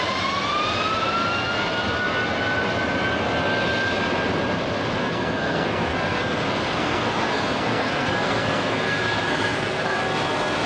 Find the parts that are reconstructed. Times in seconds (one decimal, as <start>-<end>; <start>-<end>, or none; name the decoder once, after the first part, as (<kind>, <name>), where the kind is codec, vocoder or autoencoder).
5.0-10.0 (codec, SNAC)

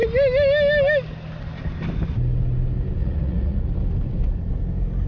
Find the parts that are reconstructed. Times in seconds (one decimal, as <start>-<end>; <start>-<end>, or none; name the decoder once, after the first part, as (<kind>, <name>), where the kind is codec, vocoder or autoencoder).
3.0-3.6 (vocoder, Vocos)

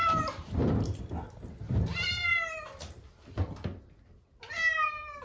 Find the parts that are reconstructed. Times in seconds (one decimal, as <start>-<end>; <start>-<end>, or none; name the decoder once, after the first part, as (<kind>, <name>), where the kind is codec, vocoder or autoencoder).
0.0-1.0 (vocoder, BigVGAN v2)

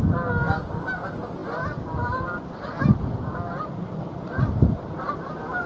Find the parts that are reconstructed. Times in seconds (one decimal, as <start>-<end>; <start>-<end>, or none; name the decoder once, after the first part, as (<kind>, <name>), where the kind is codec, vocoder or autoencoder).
none

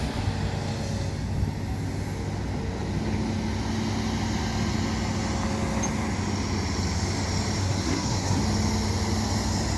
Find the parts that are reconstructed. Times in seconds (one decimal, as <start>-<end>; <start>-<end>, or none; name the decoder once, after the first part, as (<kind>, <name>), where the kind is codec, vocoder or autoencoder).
7.6-8.4 (codec, SNAC)

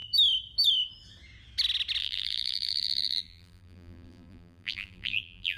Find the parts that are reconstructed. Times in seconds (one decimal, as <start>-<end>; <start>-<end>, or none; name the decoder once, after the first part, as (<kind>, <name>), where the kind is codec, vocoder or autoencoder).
2.0-5.6 (vocoder, BigVGAN v2)

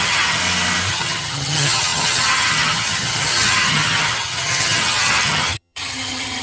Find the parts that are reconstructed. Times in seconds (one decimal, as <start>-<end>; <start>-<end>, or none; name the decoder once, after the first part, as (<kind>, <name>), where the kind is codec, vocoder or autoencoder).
0.0-0.4 (vocoder, HiFi-GAN); 0.9-6.4